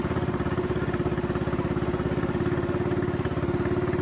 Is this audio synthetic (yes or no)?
no